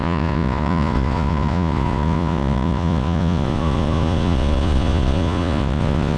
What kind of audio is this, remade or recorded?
remade